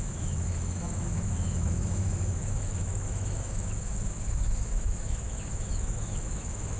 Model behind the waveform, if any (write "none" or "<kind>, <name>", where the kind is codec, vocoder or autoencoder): autoencoder, DAC-VAE